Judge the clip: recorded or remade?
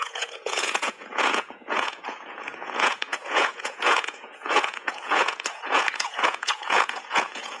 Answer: remade